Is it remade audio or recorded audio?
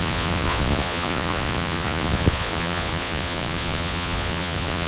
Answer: remade